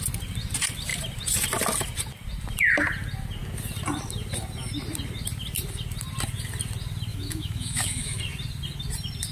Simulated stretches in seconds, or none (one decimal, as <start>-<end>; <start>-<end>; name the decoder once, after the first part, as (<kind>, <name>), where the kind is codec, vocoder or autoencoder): 7.1-8.2 (autoencoder, DAC-VAE)